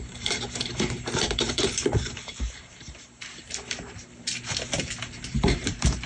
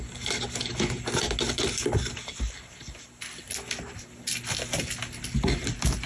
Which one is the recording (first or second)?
second